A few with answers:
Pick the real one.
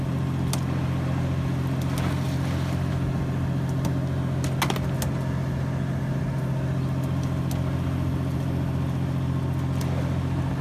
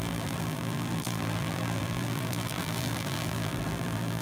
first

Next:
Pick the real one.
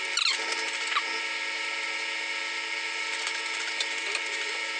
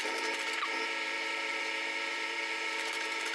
first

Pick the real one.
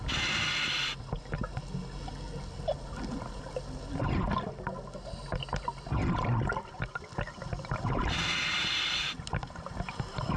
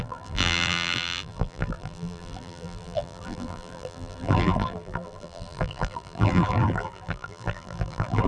first